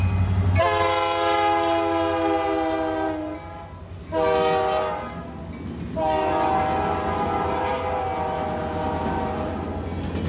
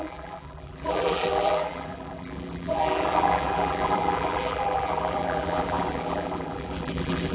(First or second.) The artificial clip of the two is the second